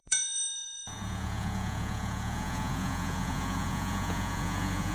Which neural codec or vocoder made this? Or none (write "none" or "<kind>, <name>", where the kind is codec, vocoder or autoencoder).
vocoder, Vocos